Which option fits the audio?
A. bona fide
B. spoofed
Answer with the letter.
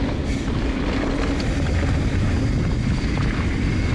A